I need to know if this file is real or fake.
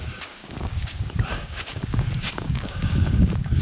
fake